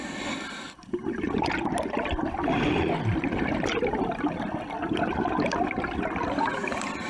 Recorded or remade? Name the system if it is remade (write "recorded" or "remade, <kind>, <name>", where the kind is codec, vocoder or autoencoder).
recorded